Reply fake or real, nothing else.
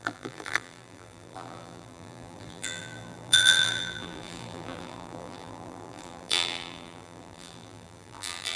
fake